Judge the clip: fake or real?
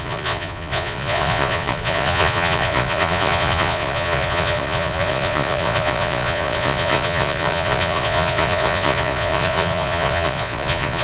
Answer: fake